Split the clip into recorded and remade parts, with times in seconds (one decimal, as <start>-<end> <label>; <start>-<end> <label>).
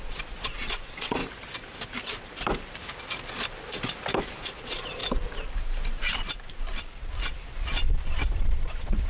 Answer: 0.0-1.2 remade; 1.2-4.2 recorded; 4.2-5.0 remade; 5.0-7.2 recorded; 7.2-9.1 remade